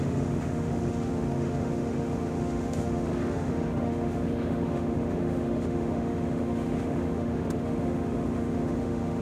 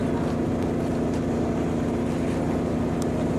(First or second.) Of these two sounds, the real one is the second